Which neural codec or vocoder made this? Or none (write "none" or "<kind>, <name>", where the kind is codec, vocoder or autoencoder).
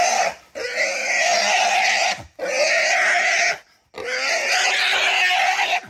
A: none